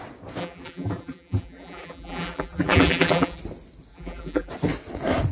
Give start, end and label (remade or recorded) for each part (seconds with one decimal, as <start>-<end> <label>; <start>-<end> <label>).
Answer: 0.0-0.4 recorded; 0.4-3.4 remade; 3.4-3.9 recorded; 3.9-4.5 remade; 4.5-5.3 recorded